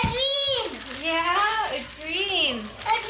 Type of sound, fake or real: real